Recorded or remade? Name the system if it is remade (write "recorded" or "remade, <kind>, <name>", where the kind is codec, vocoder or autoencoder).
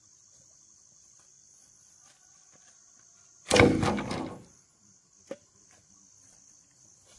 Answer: recorded